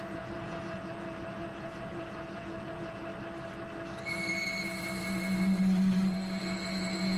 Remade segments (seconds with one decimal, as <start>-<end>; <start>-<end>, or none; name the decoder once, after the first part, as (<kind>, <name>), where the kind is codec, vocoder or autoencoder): 0.0-3.1 (vocoder, Vocos); 6.4-7.2